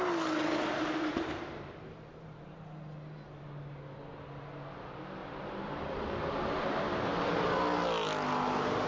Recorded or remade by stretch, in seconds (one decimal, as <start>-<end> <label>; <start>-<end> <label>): 0.0-1.1 recorded; 1.1-2.6 remade; 2.6-5.2 recorded; 5.2-6.8 remade; 6.8-8.9 recorded